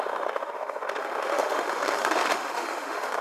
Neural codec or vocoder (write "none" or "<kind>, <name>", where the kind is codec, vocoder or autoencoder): autoencoder, DAC-VAE